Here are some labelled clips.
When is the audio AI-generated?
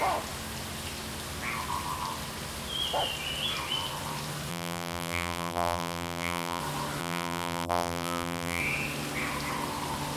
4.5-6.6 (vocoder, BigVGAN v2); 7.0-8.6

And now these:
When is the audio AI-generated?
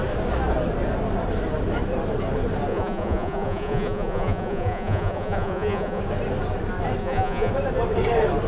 2.7-6.0 (vocoder, Vocos); 7.0-7.5